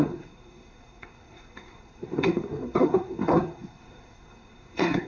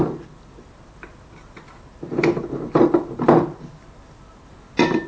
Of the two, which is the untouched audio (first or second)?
second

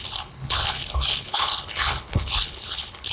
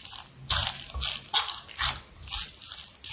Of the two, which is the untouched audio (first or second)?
second